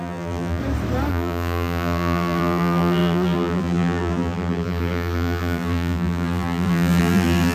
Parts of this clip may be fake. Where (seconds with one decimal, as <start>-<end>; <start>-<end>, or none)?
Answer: 0.0-0.6; 1.1-7.5